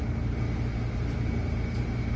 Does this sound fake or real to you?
real